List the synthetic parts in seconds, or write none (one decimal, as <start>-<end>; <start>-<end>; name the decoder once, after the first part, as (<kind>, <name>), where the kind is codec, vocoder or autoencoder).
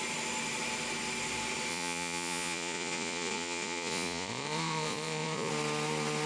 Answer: 1.7-5.5 (vocoder, Vocos)